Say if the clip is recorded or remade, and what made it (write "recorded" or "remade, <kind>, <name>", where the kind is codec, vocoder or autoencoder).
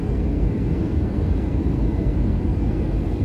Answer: remade, codec, SNAC